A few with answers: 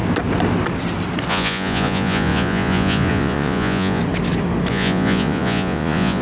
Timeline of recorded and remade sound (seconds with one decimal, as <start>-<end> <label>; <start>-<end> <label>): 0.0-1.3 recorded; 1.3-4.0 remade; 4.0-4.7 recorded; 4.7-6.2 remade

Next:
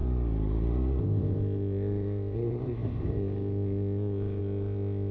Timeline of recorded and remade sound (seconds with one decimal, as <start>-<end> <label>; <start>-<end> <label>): 0.0-1.0 recorded; 1.0-5.1 remade

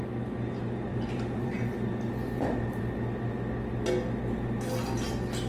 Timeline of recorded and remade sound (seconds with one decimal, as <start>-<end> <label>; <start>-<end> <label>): 0.0-0.9 recorded; 0.9-2.8 remade; 2.8-5.5 recorded